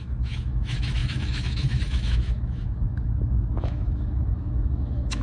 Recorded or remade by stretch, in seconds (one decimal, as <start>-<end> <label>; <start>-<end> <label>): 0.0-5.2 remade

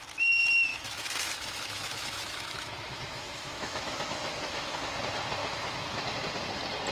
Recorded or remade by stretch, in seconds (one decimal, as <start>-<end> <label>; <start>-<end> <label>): 0.0-0.7 recorded; 0.7-4.8 remade; 4.8-5.4 recorded; 5.4-6.0 remade; 6.0-6.9 recorded

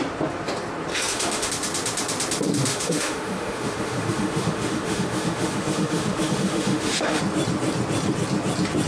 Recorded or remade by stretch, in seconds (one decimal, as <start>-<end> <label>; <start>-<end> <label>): 0.0-0.9 recorded; 0.9-1.5 remade; 1.5-2.7 recorded; 2.7-7.2 remade; 7.2-8.9 recorded